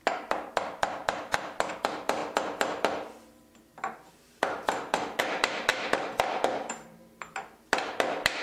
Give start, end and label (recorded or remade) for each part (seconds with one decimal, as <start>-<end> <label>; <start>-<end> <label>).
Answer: 0.0-8.4 remade